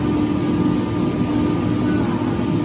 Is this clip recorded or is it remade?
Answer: recorded